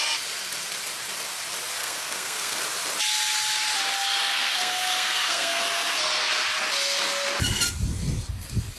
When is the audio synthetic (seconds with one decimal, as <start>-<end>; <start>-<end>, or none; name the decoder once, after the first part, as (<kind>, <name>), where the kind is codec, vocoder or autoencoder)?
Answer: 1.8-2.6 (codec, SNAC); 4.3-5.6